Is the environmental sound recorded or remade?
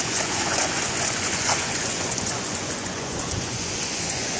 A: remade